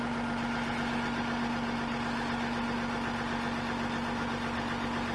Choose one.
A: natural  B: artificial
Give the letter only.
A